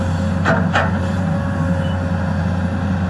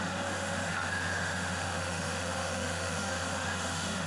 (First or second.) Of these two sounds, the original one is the first